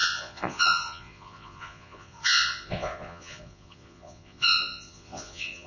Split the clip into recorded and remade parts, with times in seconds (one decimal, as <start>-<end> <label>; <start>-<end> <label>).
0.0-5.7 remade